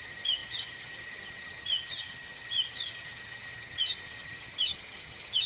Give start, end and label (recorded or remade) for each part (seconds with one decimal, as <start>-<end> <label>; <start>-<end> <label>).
0.0-5.5 remade